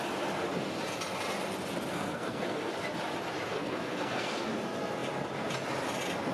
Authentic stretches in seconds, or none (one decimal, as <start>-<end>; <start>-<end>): 0.0-1.9; 2.7-3.5; 4.5-6.3